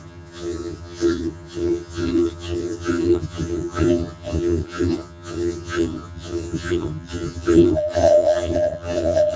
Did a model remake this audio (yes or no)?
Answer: yes